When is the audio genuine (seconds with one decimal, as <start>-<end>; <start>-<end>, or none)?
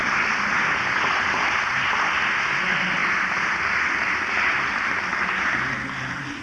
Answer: 0.0-6.4